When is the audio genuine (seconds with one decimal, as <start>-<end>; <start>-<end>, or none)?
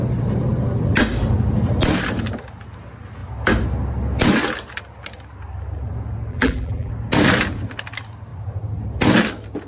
0.0-6.3; 6.9-9.7